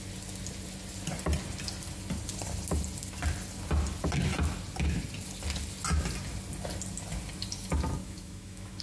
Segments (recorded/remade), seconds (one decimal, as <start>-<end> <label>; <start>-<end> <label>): 0.0-8.0 recorded; 8.0-8.8 remade